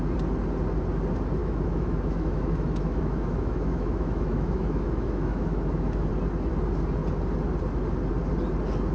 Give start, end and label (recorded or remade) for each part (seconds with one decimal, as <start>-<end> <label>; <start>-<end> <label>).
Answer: 0.0-1.4 recorded; 1.4-6.1 remade; 6.1-8.9 recorded